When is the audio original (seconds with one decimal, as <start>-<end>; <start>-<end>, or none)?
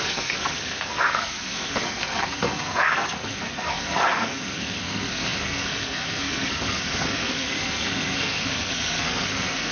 none